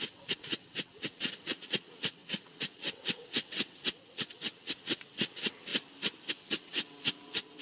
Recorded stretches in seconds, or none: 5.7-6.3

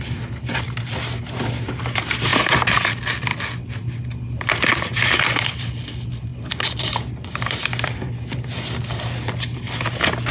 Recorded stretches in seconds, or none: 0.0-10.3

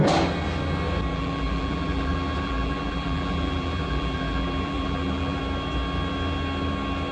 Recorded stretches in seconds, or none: 0.0-1.1; 5.4-7.1

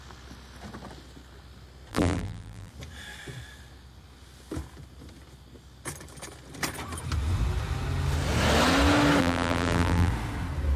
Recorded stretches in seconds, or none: 0.0-1.9; 2.7-9.2; 10.1-10.8